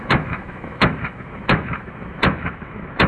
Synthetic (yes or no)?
yes